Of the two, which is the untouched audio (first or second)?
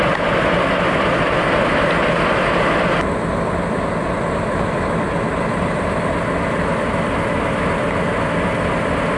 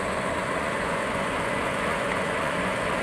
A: first